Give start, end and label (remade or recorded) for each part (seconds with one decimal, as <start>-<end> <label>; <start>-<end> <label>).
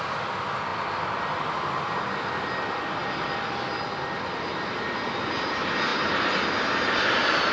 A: 0.0-0.7 recorded; 0.7-2.0 remade; 2.0-3.0 recorded; 3.0-3.8 remade; 3.8-7.5 recorded